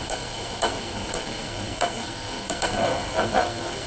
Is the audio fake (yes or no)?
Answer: yes